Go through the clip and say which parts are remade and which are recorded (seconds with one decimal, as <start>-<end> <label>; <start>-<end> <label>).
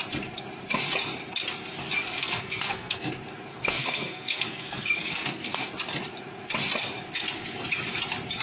0.0-2.2 recorded; 2.2-3.1 remade; 3.1-3.5 recorded; 3.5-5.7 remade; 5.7-8.4 recorded